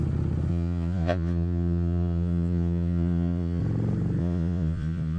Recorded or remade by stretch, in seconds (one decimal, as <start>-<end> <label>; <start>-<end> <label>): 0.0-0.5 recorded; 0.5-3.6 remade; 3.6-4.2 recorded; 4.2-5.2 remade